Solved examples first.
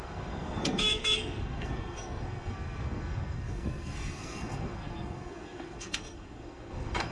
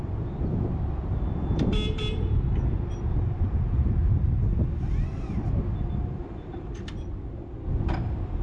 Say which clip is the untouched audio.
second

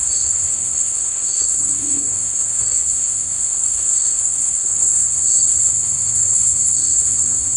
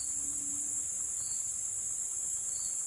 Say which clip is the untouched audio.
second